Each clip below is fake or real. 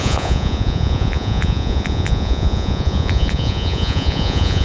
fake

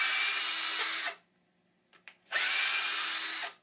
real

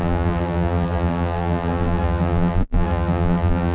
fake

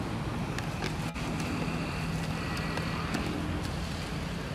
real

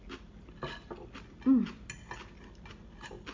real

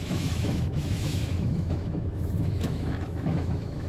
fake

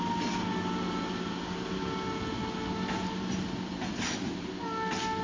real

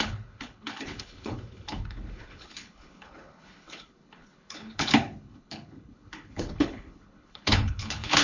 fake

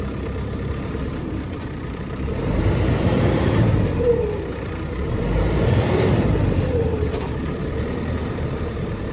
fake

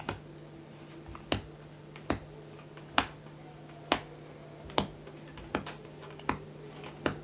real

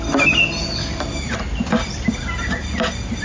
real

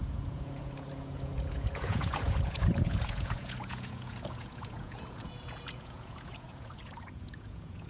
fake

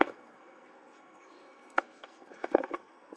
fake